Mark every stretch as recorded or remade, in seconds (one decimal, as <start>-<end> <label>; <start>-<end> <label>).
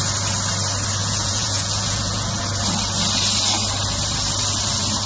0.0-1.0 recorded; 1.0-2.4 remade; 2.4-5.1 recorded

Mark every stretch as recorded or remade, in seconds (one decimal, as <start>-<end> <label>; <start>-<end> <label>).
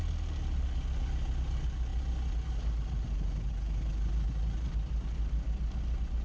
0.0-6.2 recorded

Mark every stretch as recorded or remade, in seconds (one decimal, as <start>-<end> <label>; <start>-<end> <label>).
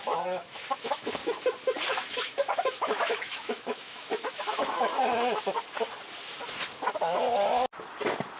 0.0-1.2 remade; 1.2-1.9 recorded; 1.9-4.9 remade; 4.9-8.4 recorded